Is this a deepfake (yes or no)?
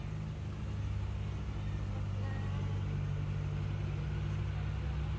no